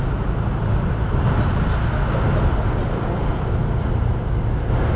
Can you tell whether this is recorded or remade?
recorded